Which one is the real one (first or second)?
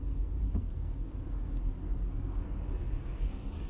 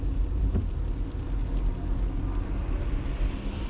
second